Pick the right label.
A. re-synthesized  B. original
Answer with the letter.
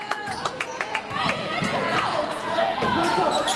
A